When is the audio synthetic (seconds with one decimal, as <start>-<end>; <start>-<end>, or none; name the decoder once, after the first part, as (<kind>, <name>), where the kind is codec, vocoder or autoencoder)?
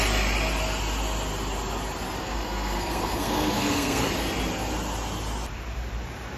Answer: 2.2-4.1 (codec, SNAC)